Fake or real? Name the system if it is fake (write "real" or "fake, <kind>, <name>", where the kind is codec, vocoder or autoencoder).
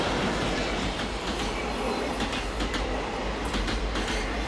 real